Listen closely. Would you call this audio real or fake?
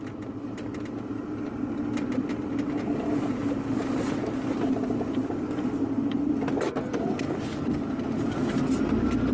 real